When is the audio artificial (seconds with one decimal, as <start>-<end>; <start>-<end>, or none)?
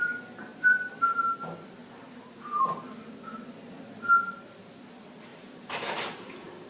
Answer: 0.5-1.2; 5.3-6.7